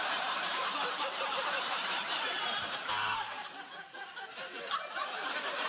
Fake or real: fake